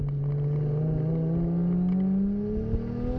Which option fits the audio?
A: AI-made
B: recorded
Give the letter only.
B